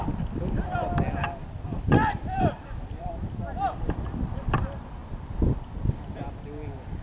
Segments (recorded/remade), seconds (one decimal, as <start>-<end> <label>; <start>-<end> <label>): 0.0-1.7 recorded; 1.7-3.1 remade; 3.1-7.0 recorded